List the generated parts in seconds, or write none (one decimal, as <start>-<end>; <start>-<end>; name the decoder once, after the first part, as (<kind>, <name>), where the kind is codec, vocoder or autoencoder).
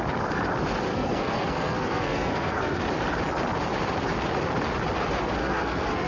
0.9-2.8 (codec, SNAC); 5.4-6.1